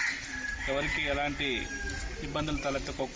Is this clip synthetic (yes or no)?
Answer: no